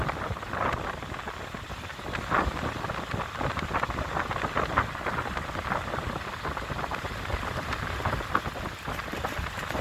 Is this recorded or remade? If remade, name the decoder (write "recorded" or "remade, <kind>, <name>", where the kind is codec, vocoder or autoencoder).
recorded